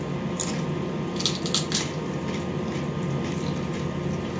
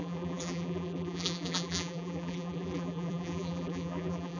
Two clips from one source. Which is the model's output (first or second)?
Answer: second